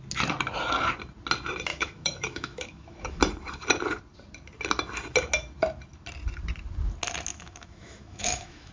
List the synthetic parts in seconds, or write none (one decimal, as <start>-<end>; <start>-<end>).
1.7-3.2; 7.3-8.7